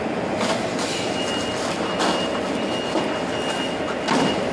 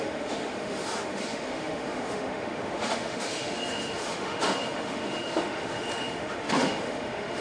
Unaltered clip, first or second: first